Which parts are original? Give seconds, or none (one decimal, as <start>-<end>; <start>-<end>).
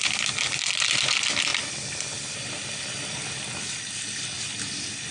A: 0.0-5.1